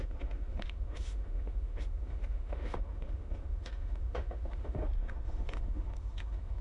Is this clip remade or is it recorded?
remade